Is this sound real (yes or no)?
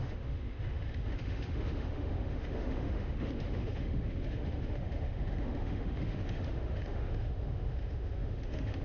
no